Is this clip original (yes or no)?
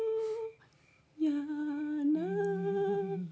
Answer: yes